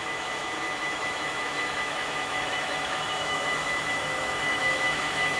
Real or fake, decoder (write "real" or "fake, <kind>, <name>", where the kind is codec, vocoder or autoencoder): fake, autoencoder, DAC-VAE